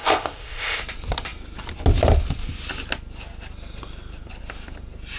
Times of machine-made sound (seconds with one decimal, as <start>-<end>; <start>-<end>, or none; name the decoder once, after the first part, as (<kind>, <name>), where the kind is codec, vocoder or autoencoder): 0.0-0.8 (codec, ZipCodec)